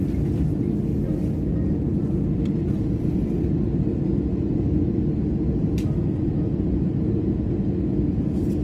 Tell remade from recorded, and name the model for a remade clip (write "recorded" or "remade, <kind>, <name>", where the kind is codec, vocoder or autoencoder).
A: recorded